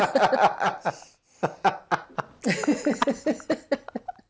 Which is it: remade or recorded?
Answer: recorded